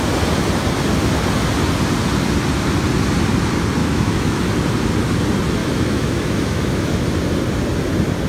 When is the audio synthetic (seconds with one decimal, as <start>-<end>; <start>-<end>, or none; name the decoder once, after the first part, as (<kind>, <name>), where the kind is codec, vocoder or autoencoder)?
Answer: 3.8-4.5 (autoencoder, DAC-VAE); 5.6-7.0